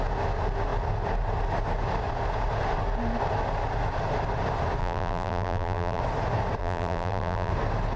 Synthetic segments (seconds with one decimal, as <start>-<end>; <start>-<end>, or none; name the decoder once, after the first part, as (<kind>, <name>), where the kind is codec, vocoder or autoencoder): 4.8-6.0 (vocoder, BigVGAN v2); 6.6-7.5